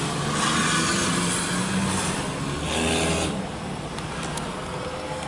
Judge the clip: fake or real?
real